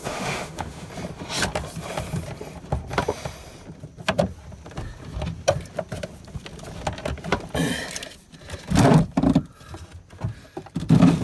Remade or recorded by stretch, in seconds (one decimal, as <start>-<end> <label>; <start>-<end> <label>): 0.0-0.9 remade; 0.9-11.2 recorded